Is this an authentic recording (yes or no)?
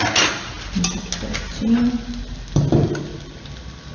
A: yes